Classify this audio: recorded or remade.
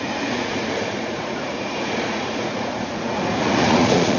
remade